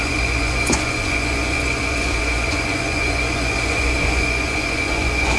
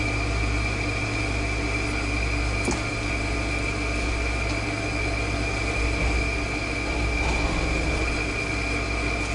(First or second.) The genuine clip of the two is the second